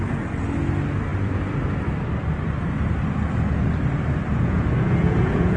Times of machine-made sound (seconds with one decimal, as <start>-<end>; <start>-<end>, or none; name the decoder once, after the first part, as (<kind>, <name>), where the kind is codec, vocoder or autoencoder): 4.3-5.6 (vocoder, Vocos)